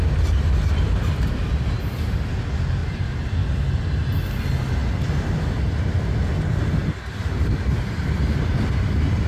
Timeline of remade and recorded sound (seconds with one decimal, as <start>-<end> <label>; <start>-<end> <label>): 0.0-2.8 recorded; 2.8-3.3 remade; 3.3-9.3 recorded